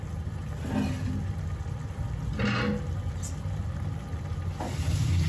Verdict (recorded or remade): recorded